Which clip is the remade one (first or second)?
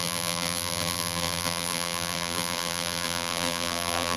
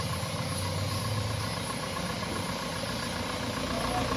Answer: first